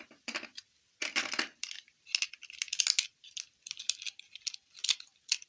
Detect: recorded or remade recorded